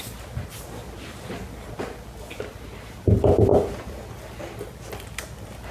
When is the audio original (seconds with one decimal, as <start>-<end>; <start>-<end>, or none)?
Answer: 0.0-5.7